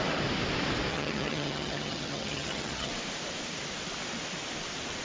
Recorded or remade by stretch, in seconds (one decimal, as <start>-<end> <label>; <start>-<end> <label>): 0.0-0.9 recorded; 0.9-2.9 remade; 2.9-5.0 recorded